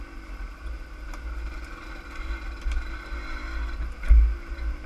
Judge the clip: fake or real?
real